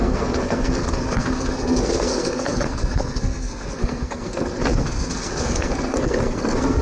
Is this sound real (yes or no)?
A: no